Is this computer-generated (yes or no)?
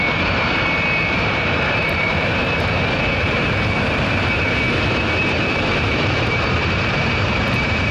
yes